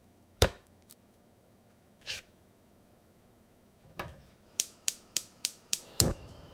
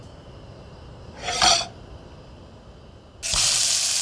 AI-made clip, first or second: first